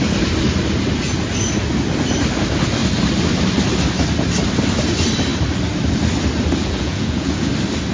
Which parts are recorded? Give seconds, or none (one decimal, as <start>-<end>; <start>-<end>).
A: 0.0-6.6; 7.5-7.9